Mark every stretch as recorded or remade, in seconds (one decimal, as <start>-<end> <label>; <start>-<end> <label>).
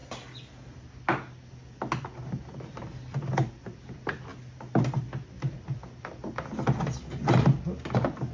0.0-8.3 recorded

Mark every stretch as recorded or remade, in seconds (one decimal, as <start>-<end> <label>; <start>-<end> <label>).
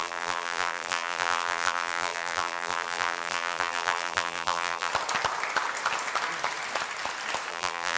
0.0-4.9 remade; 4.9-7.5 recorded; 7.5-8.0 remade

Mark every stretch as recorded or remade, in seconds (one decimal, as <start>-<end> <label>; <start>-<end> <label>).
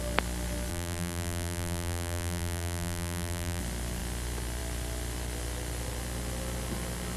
0.0-0.7 recorded; 0.7-3.6 remade; 3.6-7.2 recorded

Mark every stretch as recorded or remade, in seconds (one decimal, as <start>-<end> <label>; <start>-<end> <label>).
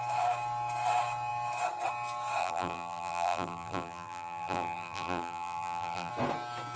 0.0-2.4 recorded; 2.4-6.1 remade; 6.1-6.8 recorded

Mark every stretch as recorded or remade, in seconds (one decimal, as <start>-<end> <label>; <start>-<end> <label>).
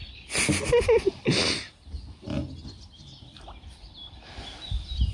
0.0-5.1 recorded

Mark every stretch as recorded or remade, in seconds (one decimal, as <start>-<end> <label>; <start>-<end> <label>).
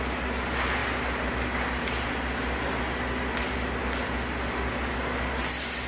0.0-5.9 recorded